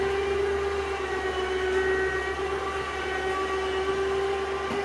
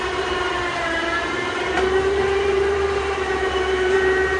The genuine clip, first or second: first